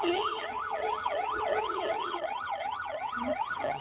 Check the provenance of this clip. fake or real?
fake